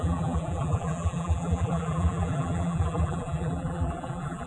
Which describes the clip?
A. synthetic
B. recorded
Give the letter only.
A